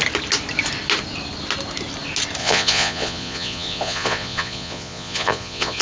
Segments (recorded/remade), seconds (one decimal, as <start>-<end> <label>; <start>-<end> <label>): 0.0-2.4 recorded; 2.4-5.8 remade